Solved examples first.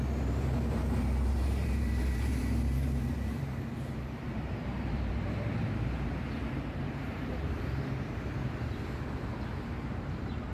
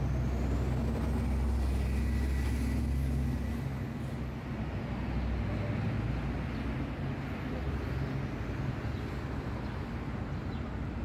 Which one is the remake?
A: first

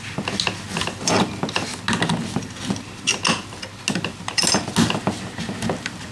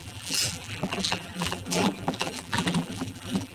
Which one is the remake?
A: second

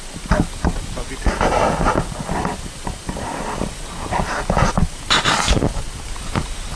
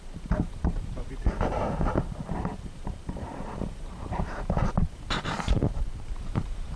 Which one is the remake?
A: second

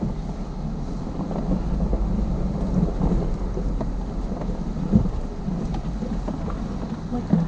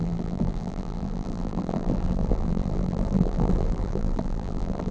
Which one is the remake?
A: second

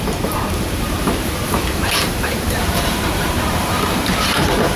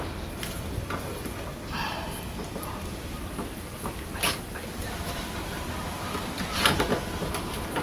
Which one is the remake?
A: first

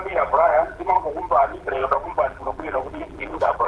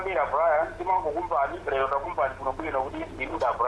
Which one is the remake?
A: first